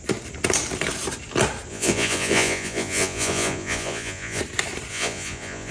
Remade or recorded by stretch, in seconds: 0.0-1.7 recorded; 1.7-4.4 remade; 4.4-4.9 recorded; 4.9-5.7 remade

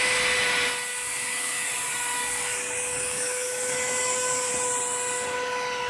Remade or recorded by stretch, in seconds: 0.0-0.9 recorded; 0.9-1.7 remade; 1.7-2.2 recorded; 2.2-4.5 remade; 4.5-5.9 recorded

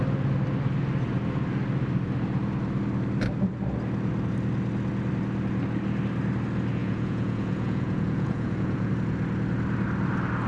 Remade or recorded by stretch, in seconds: 0.0-6.8 recorded; 6.8-8.9 remade; 8.9-10.5 recorded

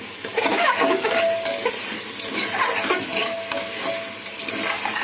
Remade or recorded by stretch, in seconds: 0.0-0.5 recorded; 0.5-1.2 remade; 1.2-3.2 recorded; 3.2-3.8 remade; 3.8-5.0 recorded

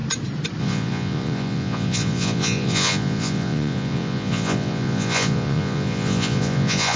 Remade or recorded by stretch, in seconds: 0.0-0.6 recorded; 0.6-7.0 remade